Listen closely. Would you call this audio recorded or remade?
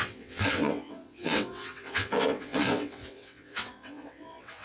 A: remade